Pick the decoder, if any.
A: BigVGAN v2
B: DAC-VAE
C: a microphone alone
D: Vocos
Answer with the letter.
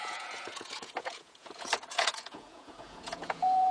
D